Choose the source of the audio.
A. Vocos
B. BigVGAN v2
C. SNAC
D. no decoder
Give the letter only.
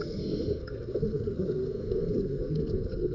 C